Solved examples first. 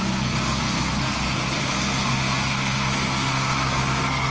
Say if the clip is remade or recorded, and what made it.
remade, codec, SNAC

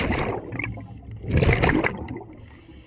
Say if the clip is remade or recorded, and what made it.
recorded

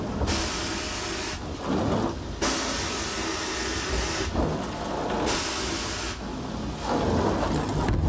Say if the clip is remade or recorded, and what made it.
recorded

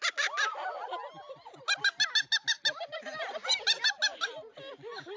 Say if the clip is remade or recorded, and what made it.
recorded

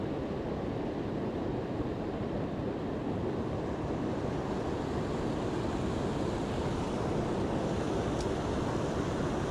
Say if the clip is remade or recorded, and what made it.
recorded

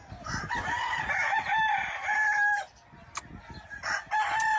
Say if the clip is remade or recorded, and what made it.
recorded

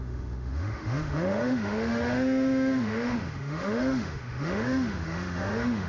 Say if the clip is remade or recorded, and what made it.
remade, autoencoder, DAC-VAE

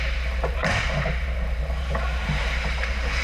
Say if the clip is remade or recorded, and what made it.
remade, vocoder, BigVGAN v2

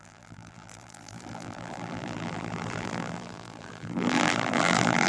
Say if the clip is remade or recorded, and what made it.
remade, vocoder, BigVGAN v2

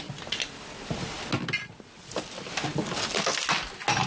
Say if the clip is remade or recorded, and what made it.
recorded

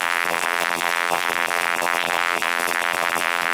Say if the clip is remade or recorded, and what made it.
remade, vocoder, BigVGAN v2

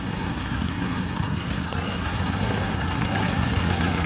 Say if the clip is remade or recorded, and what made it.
remade, codec, SNAC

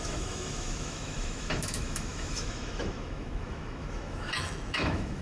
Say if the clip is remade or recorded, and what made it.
remade, autoencoder, DAC-VAE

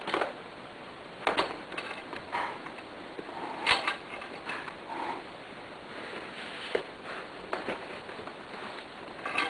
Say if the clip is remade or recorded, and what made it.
recorded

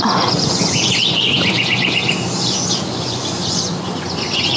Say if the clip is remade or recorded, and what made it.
remade, vocoder, Vocos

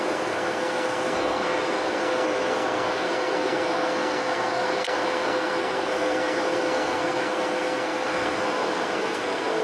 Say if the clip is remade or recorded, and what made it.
remade, codec, SNAC